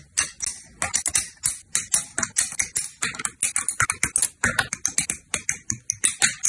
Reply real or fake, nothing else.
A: real